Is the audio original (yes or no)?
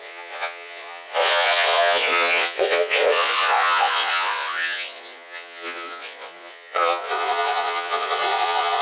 no